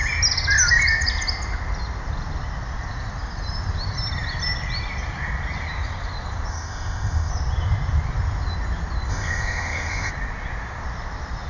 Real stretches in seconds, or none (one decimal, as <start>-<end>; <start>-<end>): 0.0-6.5; 7.3-9.1; 10.1-11.5